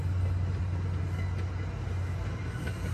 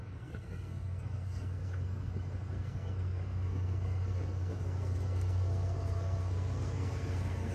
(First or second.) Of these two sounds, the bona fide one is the first